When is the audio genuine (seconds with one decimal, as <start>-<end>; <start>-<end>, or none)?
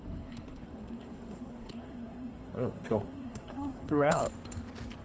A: 4.2-5.0